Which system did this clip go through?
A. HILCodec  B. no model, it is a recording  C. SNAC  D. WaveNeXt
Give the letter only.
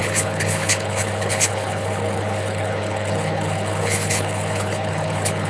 A